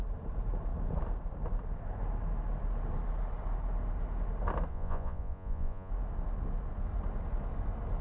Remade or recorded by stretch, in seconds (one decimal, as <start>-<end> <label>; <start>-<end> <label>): 0.0-4.7 recorded; 4.7-5.9 remade; 5.9-8.0 recorded